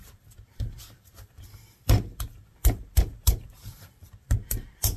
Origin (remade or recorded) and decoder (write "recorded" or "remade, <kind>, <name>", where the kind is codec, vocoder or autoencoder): remade, vocoder, BigVGAN v2